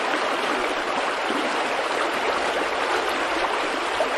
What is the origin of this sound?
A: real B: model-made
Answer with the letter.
B